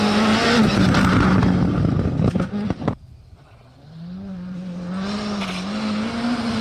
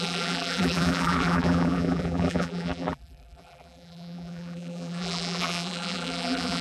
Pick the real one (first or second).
first